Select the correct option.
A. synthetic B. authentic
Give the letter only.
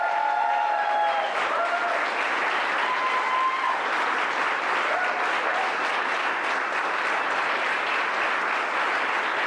B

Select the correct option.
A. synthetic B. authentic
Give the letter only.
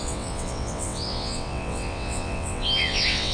A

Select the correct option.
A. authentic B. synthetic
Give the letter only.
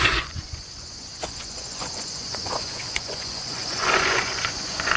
B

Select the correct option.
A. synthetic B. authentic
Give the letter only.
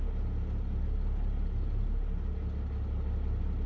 B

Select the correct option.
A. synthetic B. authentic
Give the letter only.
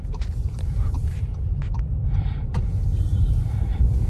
A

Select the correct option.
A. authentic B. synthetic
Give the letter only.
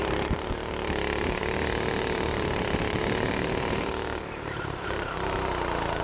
B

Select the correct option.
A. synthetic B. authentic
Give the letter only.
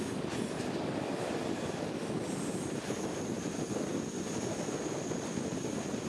B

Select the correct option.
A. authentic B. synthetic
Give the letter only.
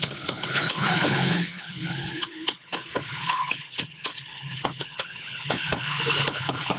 B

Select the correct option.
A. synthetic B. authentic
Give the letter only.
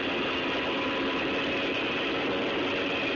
B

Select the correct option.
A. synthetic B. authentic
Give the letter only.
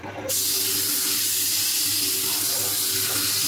B